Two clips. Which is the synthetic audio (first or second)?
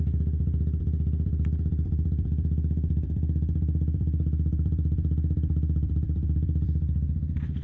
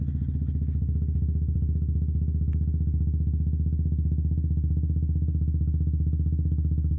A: first